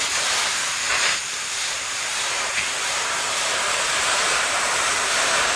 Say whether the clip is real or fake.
fake